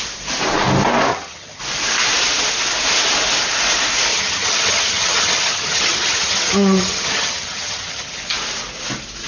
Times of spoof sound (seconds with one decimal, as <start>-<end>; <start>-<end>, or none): 1.1-1.6; 4.1-8.2